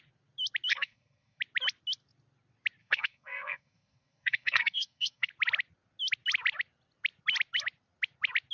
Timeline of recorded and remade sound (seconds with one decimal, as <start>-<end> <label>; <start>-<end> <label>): 0.0-0.7 recorded; 0.7-1.4 remade; 1.4-2.8 recorded; 2.8-5.3 remade; 5.3-8.5 recorded